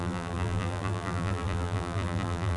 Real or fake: fake